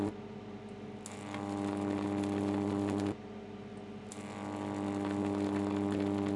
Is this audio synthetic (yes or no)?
no